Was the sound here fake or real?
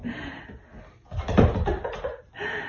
real